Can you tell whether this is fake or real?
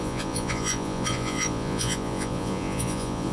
fake